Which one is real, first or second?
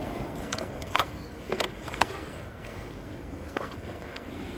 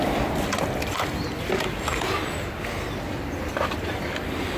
second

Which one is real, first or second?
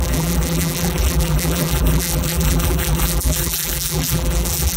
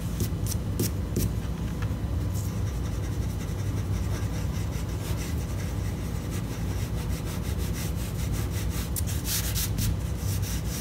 second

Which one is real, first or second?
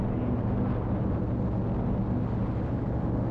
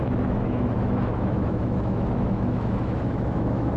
first